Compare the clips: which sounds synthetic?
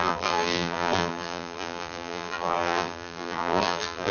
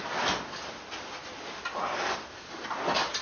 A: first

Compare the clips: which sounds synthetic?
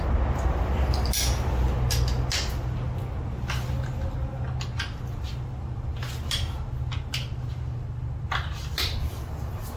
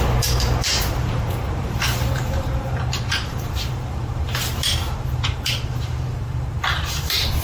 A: second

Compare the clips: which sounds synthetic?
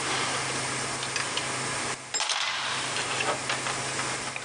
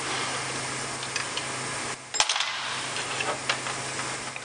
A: first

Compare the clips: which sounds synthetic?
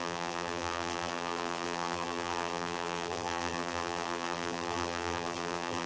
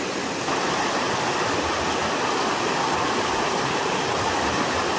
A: first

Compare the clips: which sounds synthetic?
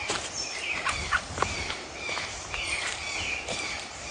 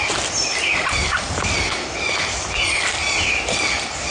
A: first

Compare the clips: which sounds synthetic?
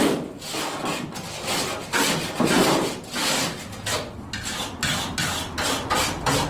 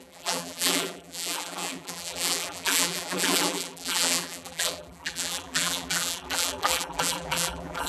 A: second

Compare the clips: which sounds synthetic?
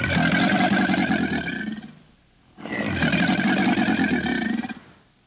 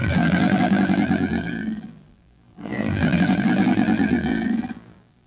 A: second